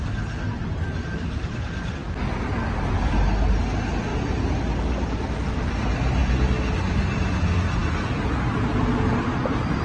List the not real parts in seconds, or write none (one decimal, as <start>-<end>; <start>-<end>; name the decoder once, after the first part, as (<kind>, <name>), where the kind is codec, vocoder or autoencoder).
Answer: none